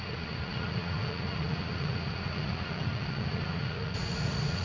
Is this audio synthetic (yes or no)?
yes